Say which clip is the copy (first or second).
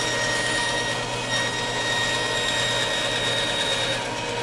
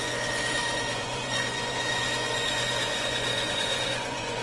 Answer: second